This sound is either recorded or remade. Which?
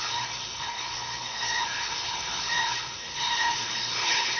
remade